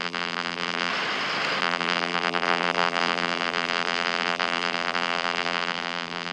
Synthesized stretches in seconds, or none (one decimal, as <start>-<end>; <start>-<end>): 0.0-0.9; 1.6-6.3

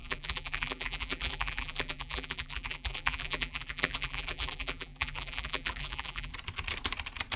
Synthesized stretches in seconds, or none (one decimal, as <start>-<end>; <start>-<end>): 0.0-6.3